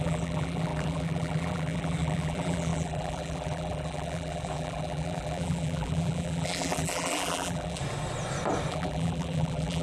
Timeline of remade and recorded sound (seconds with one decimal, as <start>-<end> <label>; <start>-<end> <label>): 0.0-7.8 remade; 7.8-8.7 recorded; 8.7-9.8 remade